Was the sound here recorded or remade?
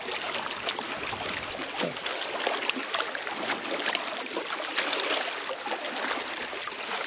recorded